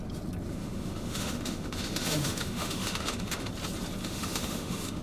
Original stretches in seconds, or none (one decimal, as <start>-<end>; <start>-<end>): 0.0-0.5; 3.5-4.0